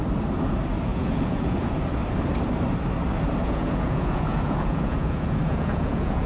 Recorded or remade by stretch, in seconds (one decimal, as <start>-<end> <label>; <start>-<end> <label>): 0.0-0.9 recorded; 0.9-1.8 remade; 1.8-3.4 recorded; 3.4-6.3 remade